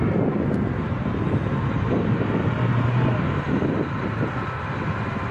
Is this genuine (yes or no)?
yes